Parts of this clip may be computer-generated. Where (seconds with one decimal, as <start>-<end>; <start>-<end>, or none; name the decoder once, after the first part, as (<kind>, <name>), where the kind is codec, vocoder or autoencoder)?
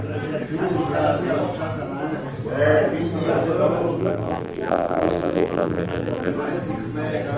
4.0-6.3 (vocoder, BigVGAN v2)